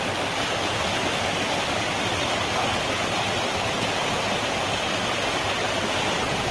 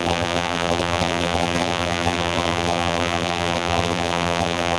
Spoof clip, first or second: second